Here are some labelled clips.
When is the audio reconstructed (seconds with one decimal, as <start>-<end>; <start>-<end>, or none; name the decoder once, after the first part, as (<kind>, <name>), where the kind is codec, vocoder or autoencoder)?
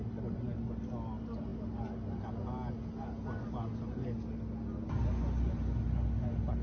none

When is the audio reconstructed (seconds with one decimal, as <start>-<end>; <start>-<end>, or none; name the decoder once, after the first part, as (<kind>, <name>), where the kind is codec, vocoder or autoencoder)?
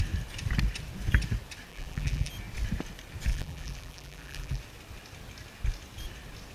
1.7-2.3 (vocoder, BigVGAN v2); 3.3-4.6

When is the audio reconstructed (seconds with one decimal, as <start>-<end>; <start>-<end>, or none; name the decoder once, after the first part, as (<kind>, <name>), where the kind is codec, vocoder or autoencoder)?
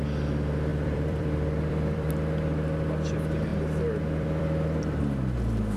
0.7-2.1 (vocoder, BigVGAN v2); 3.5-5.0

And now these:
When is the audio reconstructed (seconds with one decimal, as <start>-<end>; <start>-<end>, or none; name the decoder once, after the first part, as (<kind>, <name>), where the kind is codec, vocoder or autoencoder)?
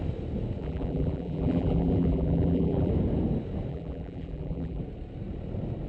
0.6-2.9 (vocoder, BigVGAN v2); 3.7-4.8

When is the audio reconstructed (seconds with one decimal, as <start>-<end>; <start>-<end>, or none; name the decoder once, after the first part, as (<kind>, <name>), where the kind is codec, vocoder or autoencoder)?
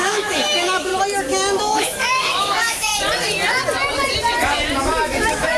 0.0-0.9 (autoencoder, DAC-VAE); 1.6-2.9; 4.8-5.6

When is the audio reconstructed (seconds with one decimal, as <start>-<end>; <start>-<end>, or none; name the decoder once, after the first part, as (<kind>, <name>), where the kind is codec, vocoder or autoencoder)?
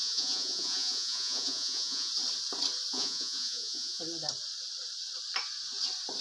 0.0-2.1 (vocoder, Vocos); 2.9-4.0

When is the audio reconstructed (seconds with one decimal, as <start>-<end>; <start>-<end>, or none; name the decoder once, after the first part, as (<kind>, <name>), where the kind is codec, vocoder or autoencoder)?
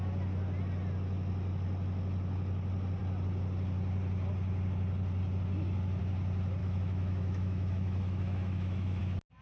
6.6-9.0 (autoencoder, DAC-VAE)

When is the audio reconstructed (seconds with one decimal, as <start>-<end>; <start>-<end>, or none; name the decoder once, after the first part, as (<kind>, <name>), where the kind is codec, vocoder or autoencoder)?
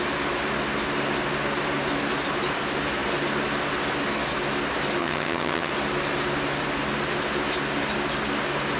5.0-5.7 (vocoder, HiFi-GAN)